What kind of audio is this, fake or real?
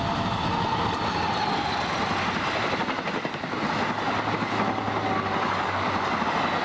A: real